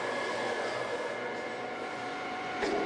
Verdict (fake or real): fake